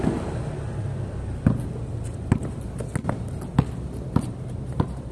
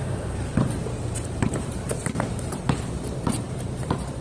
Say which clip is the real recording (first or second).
first